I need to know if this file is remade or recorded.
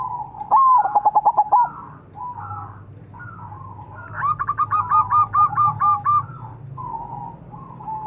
recorded